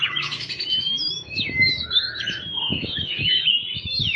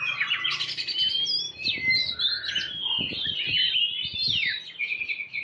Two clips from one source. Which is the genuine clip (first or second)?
second